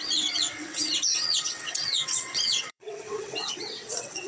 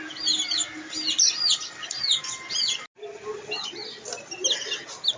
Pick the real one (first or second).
second